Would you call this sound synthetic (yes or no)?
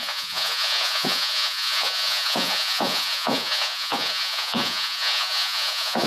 yes